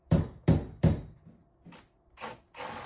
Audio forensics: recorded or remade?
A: recorded